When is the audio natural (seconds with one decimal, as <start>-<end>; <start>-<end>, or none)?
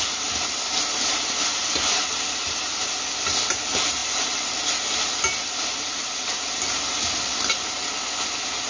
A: 0.0-8.7